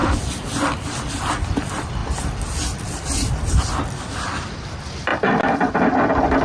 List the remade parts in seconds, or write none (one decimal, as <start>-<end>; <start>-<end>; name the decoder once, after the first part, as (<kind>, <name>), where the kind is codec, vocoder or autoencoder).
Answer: 5.1-5.8 (vocoder, BigVGAN v2)